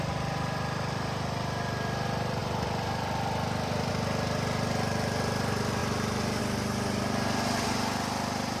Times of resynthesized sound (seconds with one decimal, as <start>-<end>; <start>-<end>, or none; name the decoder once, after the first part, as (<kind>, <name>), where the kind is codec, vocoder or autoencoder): 2.4-3.9 (vocoder, BigVGAN v2); 5.8-6.4